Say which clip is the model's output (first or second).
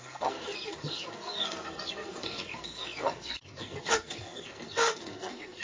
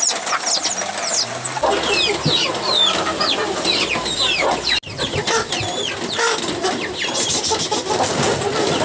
first